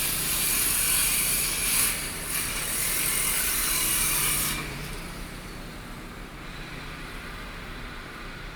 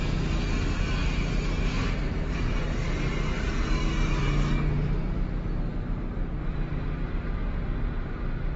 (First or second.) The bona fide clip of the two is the second